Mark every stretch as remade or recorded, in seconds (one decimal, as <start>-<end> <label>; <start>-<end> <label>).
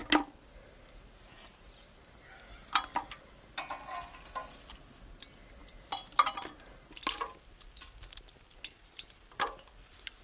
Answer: 0.0-10.2 recorded